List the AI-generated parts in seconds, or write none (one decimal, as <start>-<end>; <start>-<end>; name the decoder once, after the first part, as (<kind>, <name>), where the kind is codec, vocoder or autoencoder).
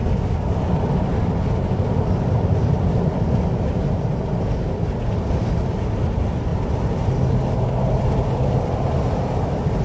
none